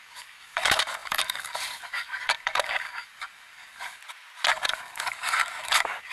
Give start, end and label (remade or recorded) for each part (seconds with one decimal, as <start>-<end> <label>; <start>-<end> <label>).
0.0-4.0 remade; 4.0-4.5 recorded; 4.5-6.1 remade